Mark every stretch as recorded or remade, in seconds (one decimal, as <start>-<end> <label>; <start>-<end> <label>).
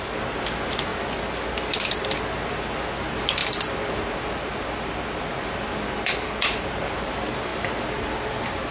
0.0-8.7 recorded